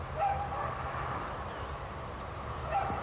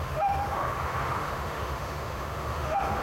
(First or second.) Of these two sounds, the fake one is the second